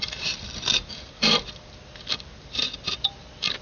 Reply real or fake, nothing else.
real